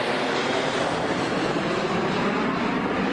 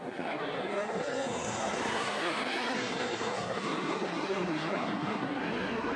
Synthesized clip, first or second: second